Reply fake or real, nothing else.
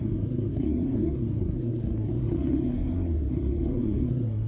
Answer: fake